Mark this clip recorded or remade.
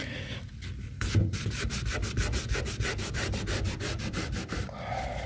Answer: remade